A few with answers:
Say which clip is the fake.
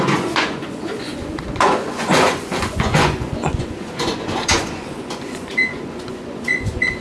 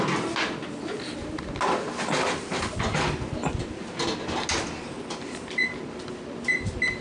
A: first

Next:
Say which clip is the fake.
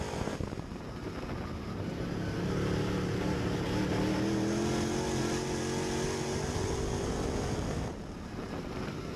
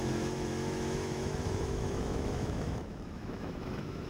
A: second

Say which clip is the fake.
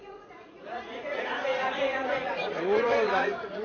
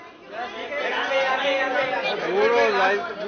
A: first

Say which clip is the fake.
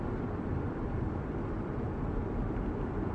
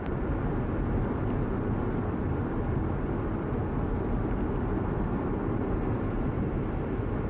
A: first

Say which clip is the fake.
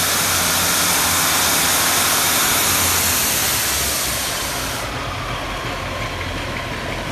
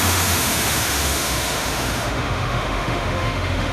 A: second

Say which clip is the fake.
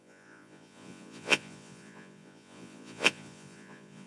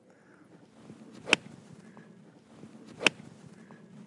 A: first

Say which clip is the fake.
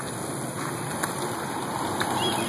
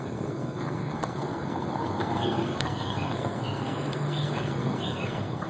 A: second